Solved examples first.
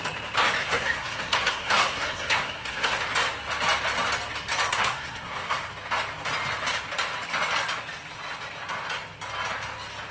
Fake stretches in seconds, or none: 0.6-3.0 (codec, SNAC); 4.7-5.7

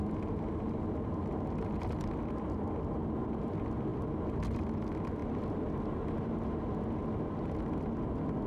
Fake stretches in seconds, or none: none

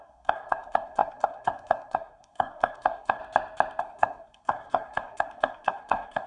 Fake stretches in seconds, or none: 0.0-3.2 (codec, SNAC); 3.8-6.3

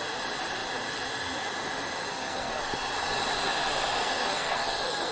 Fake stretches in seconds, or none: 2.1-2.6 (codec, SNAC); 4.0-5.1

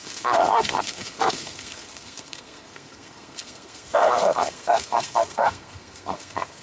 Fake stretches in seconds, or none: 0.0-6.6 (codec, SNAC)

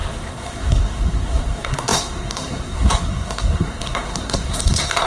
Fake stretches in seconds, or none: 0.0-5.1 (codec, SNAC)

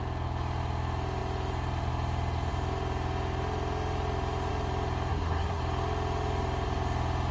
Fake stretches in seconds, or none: 5.1-5.6 (codec, SNAC)

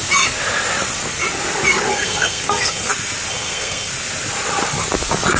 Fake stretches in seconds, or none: 1.9-2.9 (codec, SNAC); 3.3-3.9